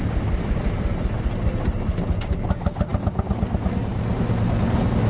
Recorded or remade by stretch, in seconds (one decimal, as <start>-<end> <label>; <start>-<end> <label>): 0.0-5.1 recorded